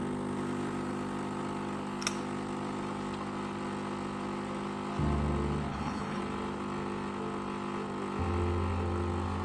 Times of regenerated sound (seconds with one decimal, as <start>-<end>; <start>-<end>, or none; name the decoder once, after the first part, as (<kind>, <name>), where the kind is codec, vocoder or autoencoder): 5.7-6.2 (codec, HILCodec)